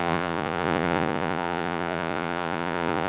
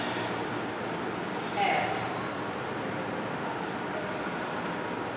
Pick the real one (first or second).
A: second